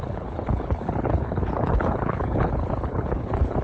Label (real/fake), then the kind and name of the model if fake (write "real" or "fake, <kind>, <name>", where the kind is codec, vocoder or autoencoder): fake, codec, HILCodec